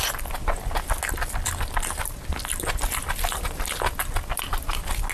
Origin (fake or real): real